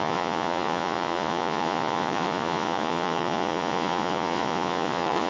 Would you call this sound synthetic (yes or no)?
yes